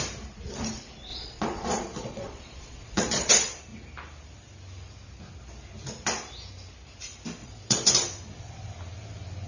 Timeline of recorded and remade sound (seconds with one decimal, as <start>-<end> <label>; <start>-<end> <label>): 0.0-1.1 recorded; 1.1-3.3 remade; 3.3-7.4 recorded; 7.4-7.9 remade; 7.9-9.5 recorded